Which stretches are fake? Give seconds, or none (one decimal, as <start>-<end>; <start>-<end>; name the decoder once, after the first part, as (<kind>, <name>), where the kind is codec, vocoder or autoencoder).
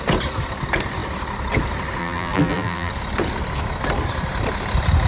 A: 2.0-2.9 (vocoder, BigVGAN v2)